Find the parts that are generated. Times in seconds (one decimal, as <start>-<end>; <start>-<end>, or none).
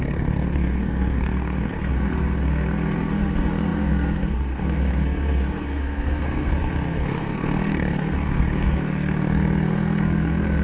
0.0-10.6